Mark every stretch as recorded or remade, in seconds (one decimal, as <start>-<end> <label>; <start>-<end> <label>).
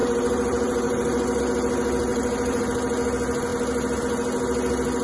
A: 0.0-1.4 remade; 1.4-2.1 recorded; 2.1-2.6 remade; 2.6-5.0 recorded